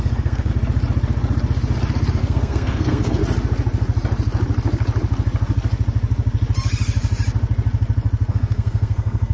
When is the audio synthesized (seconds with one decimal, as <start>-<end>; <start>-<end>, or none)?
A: 0.0-0.5; 2.2-3.2; 8.3-9.3